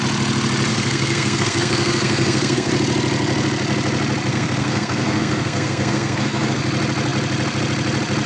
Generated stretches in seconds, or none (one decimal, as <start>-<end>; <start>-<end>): 0.7-2.7; 4.3-6.6